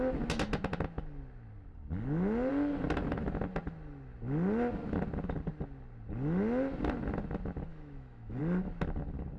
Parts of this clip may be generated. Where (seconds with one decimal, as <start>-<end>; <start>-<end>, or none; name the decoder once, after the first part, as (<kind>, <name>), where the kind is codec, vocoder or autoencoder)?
7.7-8.4 (autoencoder, DAC-VAE)